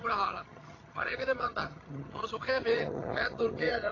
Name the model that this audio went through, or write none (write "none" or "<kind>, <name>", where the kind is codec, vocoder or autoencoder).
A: vocoder, HiFi-GAN